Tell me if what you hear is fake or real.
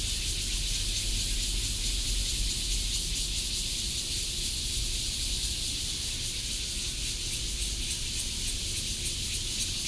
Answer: real